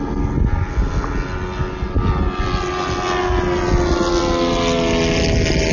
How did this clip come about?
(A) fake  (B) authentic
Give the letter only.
B